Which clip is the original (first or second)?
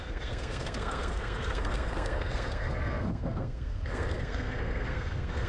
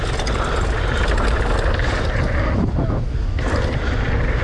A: second